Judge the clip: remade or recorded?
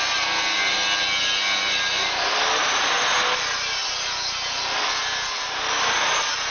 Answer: recorded